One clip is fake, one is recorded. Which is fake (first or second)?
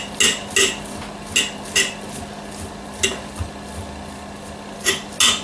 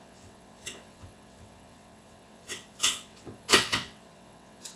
second